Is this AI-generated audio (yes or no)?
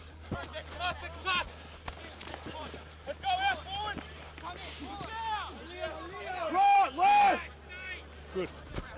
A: no